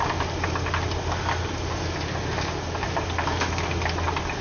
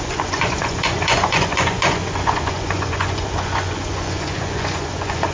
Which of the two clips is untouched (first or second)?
first